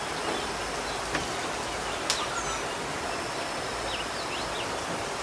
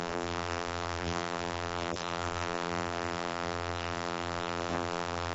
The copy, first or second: second